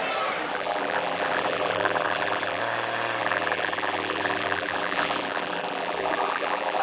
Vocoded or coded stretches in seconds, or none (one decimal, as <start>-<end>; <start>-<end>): 0.5-2.6; 3.2-6.8